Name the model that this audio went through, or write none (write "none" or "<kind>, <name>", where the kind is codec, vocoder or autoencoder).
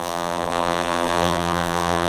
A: vocoder, BigVGAN v2